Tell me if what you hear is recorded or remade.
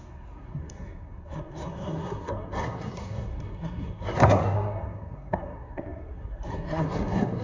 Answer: remade